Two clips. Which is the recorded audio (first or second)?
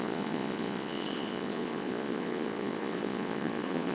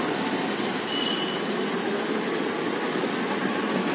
second